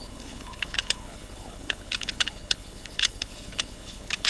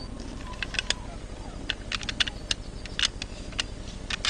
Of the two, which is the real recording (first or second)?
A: second